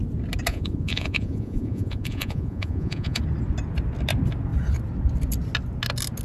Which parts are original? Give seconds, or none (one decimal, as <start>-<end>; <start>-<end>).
0.0-0.5; 3.2-6.2